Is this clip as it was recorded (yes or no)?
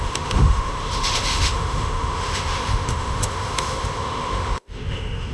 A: no